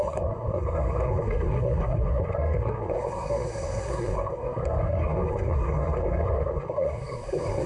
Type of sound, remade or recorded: remade